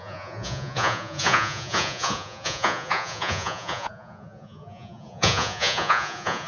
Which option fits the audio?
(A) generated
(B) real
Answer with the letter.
A